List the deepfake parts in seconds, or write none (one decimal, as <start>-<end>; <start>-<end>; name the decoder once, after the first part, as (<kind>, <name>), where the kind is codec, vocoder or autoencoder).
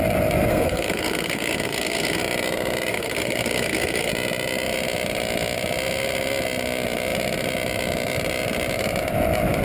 0.5-2.2 (codec, SNAC); 2.9-4.1